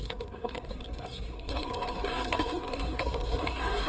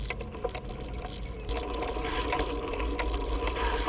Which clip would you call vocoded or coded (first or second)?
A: first